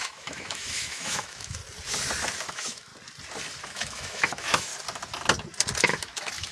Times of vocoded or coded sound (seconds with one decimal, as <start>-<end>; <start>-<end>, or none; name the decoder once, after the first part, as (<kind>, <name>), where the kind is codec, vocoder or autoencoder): 0.0-1.6 (autoencoder, DAC-VAE); 2.5-2.9; 3.6-4.7; 5.8-6.5